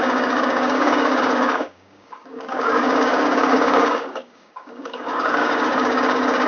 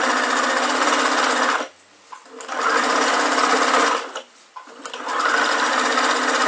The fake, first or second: first